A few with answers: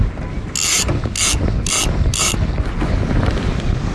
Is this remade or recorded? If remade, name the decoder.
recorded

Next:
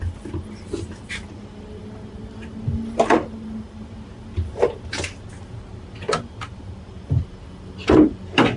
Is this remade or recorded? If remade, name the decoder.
recorded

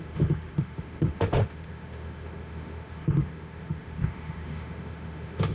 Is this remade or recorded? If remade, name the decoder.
remade, autoencoder, DAC-VAE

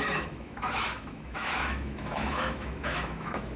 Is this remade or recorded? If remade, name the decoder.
remade, autoencoder, DAC-VAE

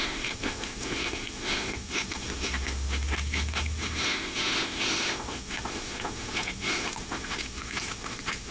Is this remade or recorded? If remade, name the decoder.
remade, autoencoder, DAC-VAE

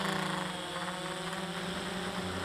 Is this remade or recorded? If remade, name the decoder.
recorded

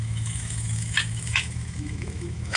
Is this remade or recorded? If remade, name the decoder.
remade, autoencoder, DAC-VAE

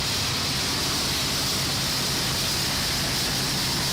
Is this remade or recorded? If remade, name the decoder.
recorded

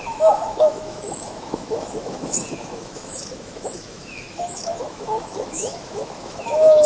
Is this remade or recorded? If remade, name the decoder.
remade, autoencoder, DAC-VAE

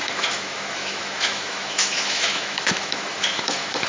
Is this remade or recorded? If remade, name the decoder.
remade, autoencoder, DAC-VAE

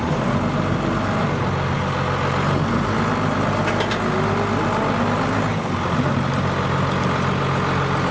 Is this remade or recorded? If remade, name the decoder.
recorded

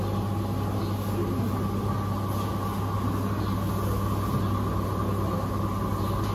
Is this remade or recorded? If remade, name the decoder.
recorded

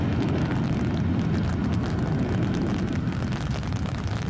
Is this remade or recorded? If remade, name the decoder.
recorded